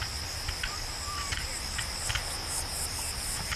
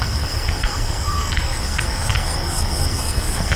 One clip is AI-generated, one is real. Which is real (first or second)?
first